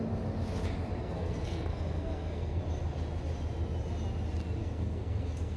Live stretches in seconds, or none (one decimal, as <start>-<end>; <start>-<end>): 0.0-1.0; 2.6-4.6